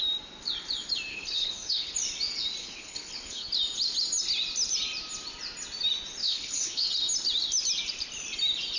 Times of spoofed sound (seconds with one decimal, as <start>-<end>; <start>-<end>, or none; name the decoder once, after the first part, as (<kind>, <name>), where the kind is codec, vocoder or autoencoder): 1.1-1.9 (codec, HILCodec); 2.6-3.5; 6.2-6.9

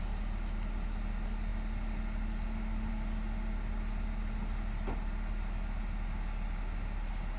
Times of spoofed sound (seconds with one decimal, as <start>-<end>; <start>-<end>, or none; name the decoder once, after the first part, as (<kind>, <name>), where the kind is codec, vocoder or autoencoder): none